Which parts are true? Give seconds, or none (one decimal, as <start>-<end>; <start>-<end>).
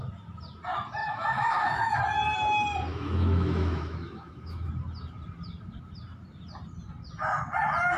0.0-1.0; 2.0-2.9; 4.7-8.0